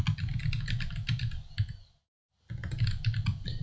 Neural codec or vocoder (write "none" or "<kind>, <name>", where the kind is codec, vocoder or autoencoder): none